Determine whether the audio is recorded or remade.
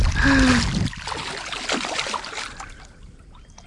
recorded